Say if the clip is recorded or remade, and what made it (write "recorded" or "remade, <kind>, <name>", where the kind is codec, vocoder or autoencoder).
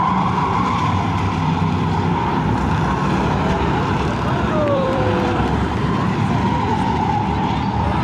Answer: remade, vocoder, BigVGAN v2